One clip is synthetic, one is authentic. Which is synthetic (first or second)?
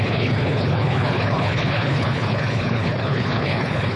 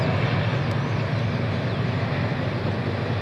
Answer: first